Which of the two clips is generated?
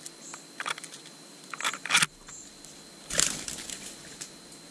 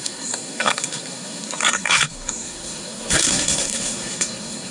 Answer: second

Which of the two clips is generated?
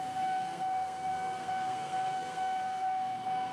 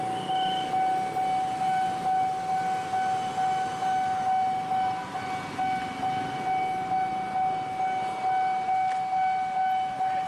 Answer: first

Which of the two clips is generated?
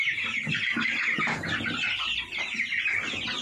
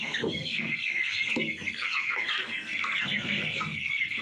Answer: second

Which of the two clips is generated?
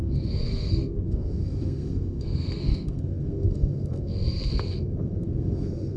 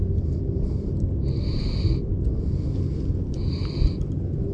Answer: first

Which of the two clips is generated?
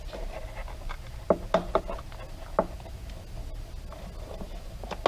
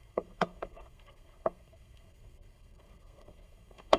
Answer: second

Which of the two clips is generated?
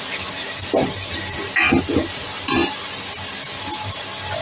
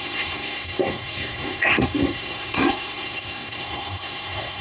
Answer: second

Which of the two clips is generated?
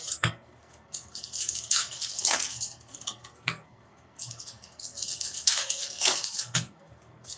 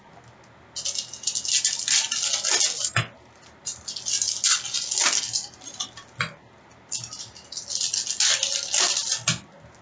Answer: first